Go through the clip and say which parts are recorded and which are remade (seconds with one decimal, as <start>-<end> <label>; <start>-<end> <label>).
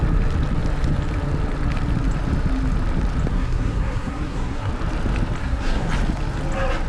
0.0-3.3 recorded; 3.3-4.7 remade; 4.7-5.4 recorded; 5.4-5.9 remade; 5.9-6.9 recorded